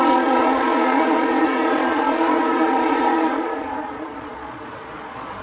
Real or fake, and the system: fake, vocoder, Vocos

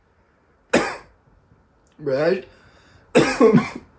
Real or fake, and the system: real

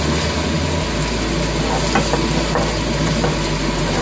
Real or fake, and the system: real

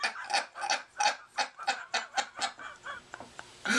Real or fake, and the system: real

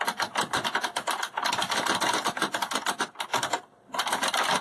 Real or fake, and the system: real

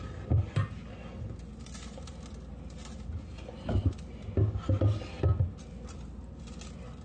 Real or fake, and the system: real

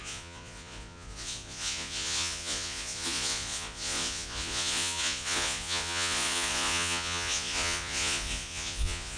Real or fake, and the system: fake, vocoder, Vocos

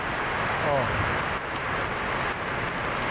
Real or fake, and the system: real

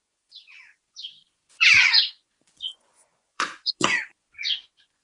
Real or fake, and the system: fake, vocoder, Vocos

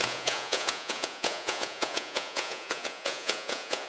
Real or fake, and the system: fake, vocoder, Vocos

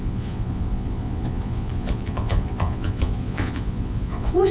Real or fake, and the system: fake, vocoder, Vocos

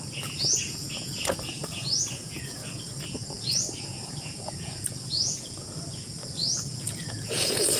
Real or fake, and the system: fake, vocoder, Vocos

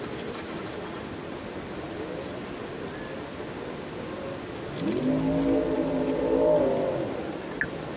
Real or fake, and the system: real